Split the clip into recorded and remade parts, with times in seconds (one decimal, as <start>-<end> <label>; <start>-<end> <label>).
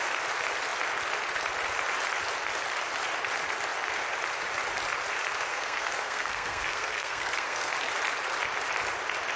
0.0-5.5 recorded; 5.5-7.7 remade; 7.7-9.4 recorded